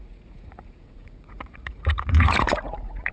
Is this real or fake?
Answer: fake